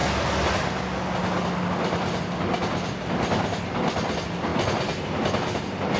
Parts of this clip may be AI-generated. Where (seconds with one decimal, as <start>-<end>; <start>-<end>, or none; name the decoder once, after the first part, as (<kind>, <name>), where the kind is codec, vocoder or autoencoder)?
none